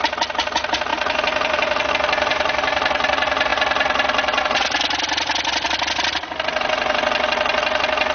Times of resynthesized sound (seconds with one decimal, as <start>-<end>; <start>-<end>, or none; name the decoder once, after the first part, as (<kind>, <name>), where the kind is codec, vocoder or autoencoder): 0.9-1.9 (vocoder, BigVGAN v2); 2.3-3.1